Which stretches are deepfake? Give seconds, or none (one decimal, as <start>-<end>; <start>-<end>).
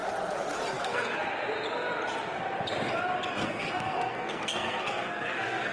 0.8-1.3; 3.3-5.7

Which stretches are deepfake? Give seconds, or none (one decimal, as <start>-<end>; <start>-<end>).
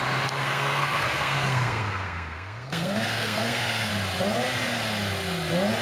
0.4-3.9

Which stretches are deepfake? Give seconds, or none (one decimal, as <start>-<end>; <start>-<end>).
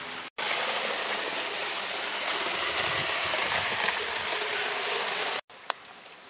none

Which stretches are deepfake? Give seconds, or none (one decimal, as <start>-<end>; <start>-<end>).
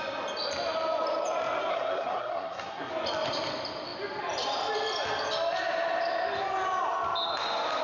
1.7-2.9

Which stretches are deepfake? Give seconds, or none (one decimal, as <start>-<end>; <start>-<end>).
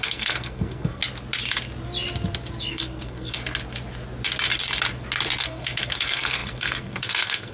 0.0-1.0; 2.7-3.4; 5.4-7.5